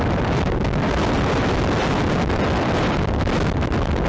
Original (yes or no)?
yes